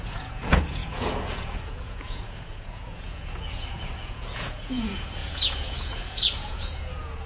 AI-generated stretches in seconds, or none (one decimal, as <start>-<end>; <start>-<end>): 0.0-7.3